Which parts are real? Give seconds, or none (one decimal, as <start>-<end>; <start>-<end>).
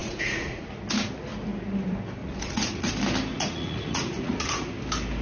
0.7-2.2; 2.9-3.3; 4.7-5.2